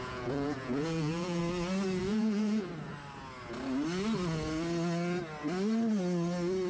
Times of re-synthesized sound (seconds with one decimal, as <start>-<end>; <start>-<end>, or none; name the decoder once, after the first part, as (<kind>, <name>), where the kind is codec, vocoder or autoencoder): 0.0-1.4 (vocoder, Vocos); 2.0-2.7

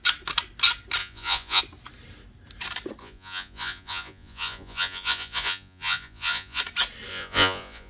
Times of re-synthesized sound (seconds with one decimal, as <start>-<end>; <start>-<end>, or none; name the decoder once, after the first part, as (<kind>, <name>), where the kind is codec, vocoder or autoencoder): 1.0-1.6 (vocoder, Vocos); 3.0-6.6; 7.1-7.9

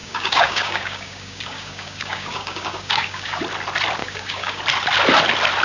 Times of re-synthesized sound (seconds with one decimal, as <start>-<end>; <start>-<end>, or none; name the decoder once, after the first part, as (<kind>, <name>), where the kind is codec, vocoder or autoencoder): 0.0-3.4 (codec, DAC); 4.0-4.6

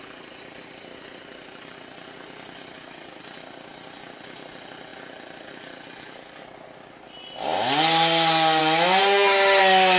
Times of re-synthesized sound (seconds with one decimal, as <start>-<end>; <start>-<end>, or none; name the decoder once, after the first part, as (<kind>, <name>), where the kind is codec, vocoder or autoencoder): 9.0-9.6 (autoencoder, DAC-VAE)

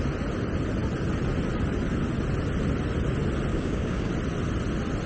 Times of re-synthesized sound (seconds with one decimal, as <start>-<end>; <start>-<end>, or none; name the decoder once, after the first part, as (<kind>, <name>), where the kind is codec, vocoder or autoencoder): 3.5-4.1 (codec, DAC)

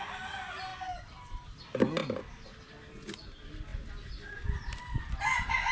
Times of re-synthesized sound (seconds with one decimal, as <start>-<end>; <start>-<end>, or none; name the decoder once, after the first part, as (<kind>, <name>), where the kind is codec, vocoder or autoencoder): 0.7-1.6 (vocoder, BigVGAN v2)